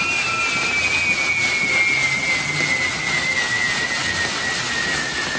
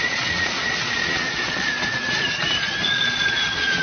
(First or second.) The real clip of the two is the first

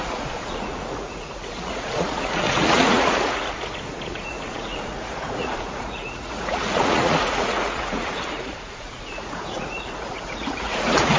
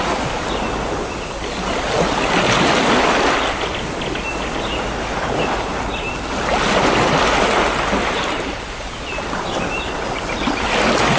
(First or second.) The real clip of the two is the second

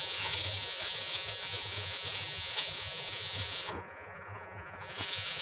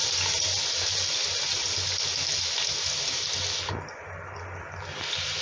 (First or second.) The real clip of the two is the second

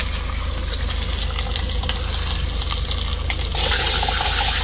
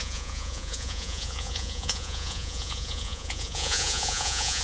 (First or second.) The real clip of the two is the first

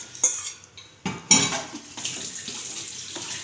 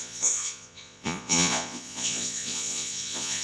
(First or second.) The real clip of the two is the first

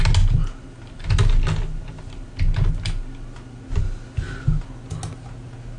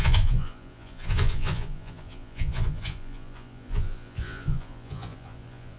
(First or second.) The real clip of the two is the first